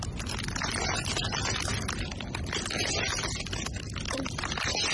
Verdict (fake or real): real